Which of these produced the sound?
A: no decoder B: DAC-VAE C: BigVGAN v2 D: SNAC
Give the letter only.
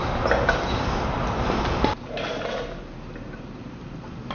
A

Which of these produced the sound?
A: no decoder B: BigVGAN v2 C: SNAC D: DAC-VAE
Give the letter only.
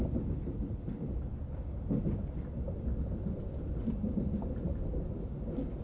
A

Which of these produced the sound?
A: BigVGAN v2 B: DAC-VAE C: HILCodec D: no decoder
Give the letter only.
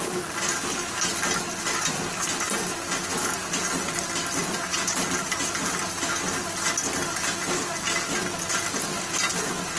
D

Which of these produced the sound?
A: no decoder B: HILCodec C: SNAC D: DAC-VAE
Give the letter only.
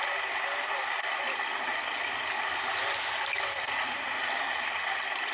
A